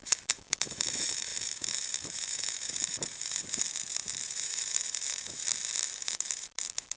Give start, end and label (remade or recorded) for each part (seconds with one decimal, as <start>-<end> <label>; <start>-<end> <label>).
0.0-5.4 remade; 5.4-6.0 recorded; 6.0-7.0 remade